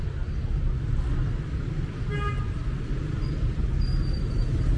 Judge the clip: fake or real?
real